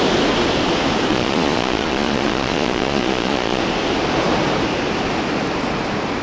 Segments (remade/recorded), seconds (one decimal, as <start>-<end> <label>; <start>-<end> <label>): 0.0-1.1 recorded; 1.1-3.6 remade; 3.6-6.2 recorded